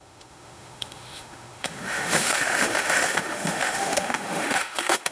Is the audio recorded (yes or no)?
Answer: no